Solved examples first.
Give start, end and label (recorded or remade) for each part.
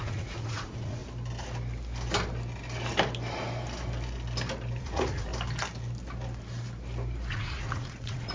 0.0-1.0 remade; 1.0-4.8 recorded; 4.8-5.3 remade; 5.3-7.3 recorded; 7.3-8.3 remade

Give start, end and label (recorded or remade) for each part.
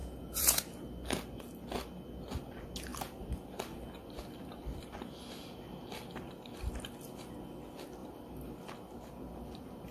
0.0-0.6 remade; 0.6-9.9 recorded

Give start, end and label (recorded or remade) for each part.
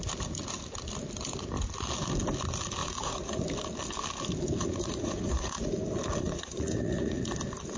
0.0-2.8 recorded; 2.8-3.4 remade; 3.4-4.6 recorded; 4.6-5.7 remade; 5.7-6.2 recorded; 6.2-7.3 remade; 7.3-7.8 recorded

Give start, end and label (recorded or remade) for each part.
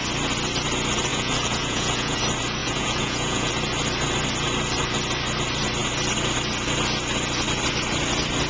0.0-1.1 recorded; 1.1-2.2 remade; 2.2-2.6 recorded; 2.6-3.5 remade; 3.5-8.5 recorded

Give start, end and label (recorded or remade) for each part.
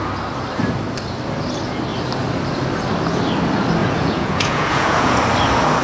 0.0-3.8 recorded; 3.8-5.2 remade; 5.2-5.8 recorded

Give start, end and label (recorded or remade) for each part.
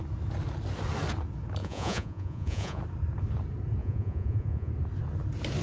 0.0-1.6 recorded; 1.6-2.8 remade; 2.8-3.8 recorded; 3.8-4.7 remade; 4.7-5.6 recorded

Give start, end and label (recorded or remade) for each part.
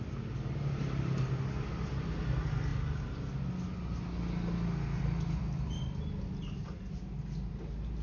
0.0-8.0 recorded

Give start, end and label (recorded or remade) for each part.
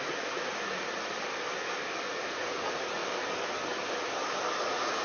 0.0-1.1 remade; 1.1-2.1 recorded; 2.1-3.0 remade; 3.0-4.6 recorded; 4.6-5.0 remade